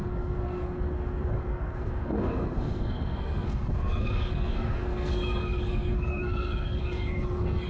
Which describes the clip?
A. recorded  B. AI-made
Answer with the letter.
B